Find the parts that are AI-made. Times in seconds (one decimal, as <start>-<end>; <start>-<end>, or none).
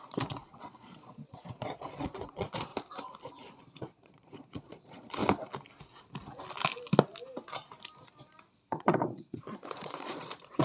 0.0-2.7; 3.6-5.2; 8.5-10.6